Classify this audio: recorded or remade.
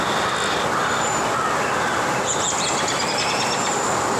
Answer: recorded